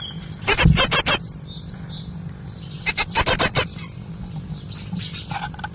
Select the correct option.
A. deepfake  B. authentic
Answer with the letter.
B